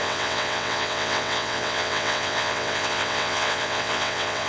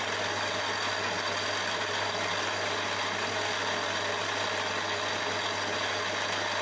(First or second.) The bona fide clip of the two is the second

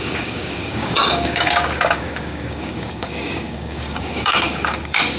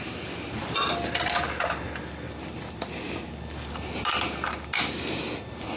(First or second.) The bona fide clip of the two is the second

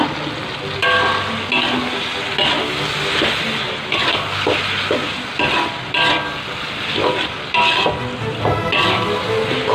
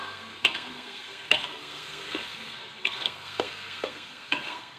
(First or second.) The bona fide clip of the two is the first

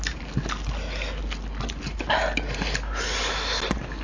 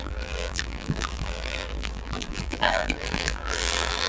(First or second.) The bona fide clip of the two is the first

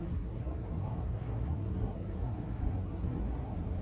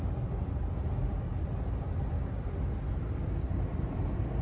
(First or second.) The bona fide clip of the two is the second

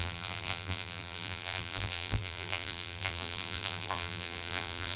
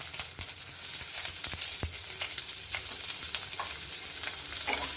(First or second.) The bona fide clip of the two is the second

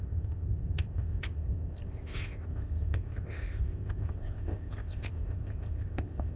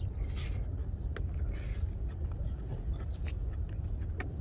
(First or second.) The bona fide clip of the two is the second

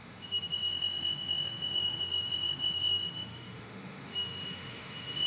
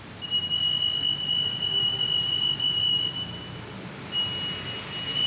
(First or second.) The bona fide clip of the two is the second